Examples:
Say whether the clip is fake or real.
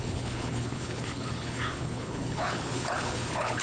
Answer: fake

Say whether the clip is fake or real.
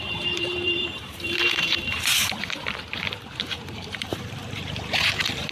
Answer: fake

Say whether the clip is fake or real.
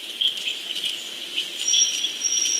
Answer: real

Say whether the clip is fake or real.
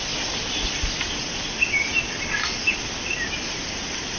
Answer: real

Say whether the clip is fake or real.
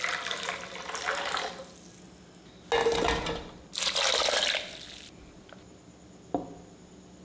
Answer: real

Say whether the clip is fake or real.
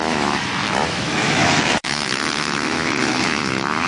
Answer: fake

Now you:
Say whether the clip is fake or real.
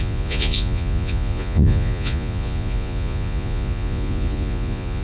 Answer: fake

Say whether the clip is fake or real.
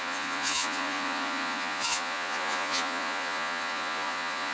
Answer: fake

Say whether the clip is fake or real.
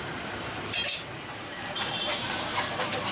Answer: fake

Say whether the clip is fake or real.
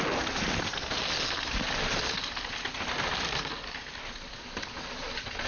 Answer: real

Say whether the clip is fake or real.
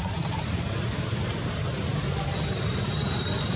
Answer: fake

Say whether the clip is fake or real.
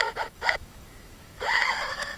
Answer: fake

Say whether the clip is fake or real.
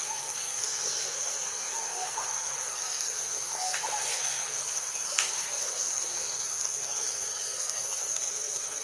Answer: fake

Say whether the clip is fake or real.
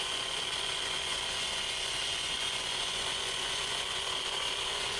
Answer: fake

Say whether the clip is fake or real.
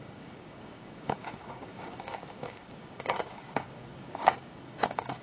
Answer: fake